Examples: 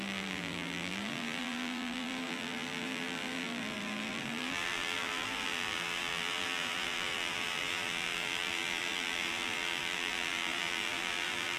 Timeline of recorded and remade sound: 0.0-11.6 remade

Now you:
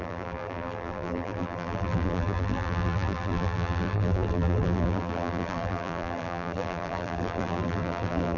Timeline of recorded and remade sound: 0.0-8.4 remade

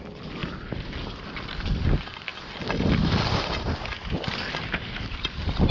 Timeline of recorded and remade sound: 0.0-5.7 recorded

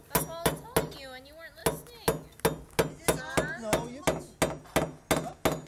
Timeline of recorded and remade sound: 0.0-5.7 recorded

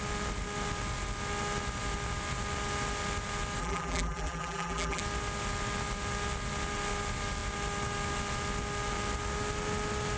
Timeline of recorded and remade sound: 0.0-3.6 recorded; 3.6-5.0 remade; 5.0-10.2 recorded

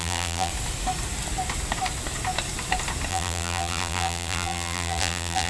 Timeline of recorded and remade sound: 0.0-0.5 remade; 0.5-3.1 recorded; 3.1-5.5 remade